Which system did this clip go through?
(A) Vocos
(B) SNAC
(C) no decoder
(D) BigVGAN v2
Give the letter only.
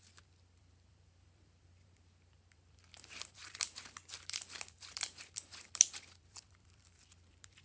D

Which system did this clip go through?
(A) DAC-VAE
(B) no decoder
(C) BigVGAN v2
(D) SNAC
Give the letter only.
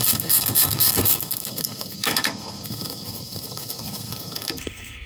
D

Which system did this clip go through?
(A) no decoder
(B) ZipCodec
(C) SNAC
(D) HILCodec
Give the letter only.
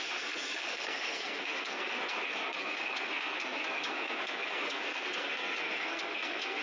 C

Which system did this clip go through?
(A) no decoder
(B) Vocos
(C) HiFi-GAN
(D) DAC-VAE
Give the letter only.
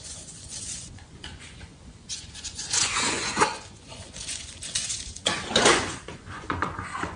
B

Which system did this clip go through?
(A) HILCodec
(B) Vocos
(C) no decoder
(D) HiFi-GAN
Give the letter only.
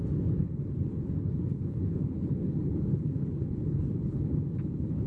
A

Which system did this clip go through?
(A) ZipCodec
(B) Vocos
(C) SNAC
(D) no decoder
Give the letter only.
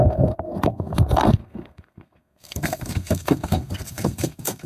C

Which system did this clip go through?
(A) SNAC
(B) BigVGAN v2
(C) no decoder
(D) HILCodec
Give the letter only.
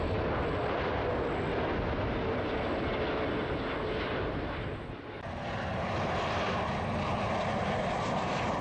C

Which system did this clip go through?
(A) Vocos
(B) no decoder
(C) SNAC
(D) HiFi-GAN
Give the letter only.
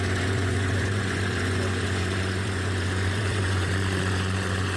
A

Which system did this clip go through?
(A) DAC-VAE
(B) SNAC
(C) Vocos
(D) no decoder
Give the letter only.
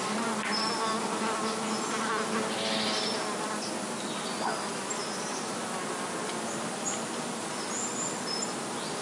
D